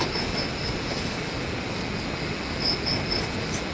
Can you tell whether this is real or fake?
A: real